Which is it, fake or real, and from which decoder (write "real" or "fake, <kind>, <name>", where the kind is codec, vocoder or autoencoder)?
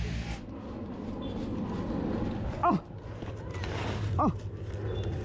real